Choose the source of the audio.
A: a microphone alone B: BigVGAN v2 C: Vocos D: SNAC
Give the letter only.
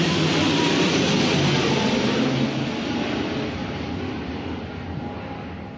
A